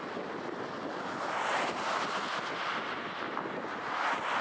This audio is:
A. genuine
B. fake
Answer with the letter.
A